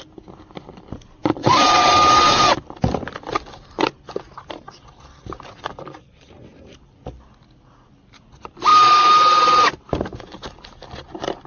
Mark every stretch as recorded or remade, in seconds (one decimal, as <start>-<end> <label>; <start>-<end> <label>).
0.0-11.5 recorded